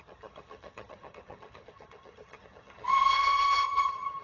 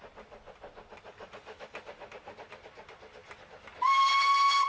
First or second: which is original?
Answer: second